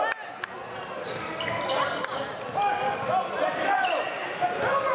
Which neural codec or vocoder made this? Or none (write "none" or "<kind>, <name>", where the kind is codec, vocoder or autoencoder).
none